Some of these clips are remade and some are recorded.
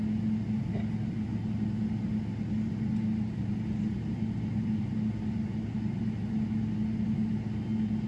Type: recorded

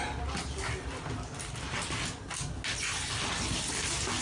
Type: recorded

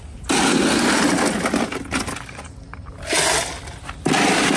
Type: recorded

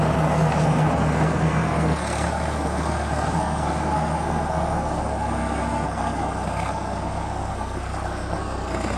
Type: remade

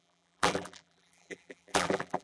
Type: remade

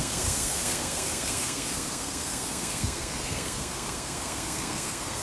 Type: remade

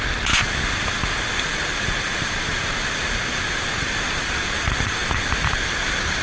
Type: recorded